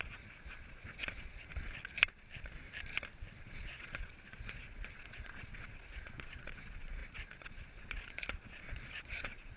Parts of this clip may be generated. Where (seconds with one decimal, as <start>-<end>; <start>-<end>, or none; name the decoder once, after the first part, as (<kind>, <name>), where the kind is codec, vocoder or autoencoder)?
0.0-1.5 (vocoder, Vocos); 3.4-9.6